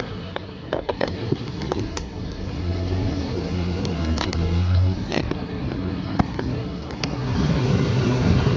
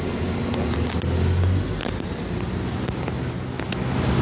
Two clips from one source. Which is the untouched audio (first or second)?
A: second